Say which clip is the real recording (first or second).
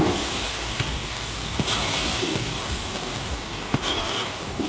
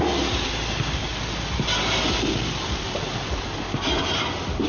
second